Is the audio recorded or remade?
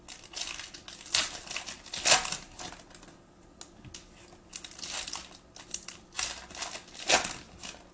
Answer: recorded